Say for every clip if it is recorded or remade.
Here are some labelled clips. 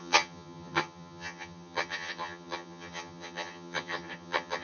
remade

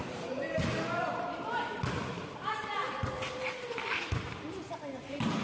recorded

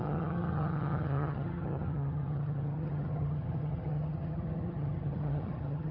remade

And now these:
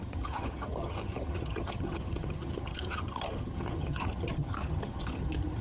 remade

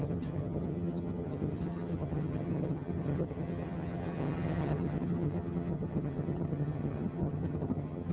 remade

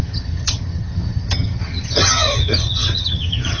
remade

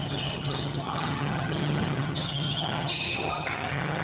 remade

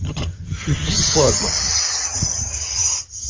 remade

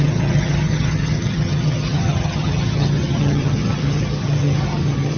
remade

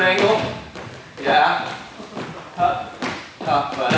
recorded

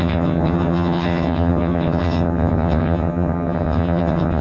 remade